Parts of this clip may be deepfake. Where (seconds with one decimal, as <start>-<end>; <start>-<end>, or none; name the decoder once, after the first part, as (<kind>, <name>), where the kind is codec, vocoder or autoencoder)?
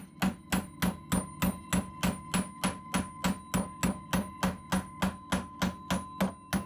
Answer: none